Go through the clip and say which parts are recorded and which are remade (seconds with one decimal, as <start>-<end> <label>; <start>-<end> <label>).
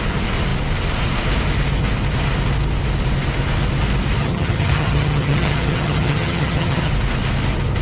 0.0-4.2 recorded; 4.2-6.9 remade; 6.9-7.8 recorded